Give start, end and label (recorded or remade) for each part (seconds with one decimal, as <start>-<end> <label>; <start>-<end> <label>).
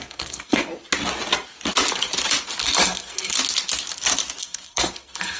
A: 0.0-0.7 remade; 0.7-2.6 recorded; 2.6-3.4 remade; 3.4-4.4 recorded; 4.4-5.4 remade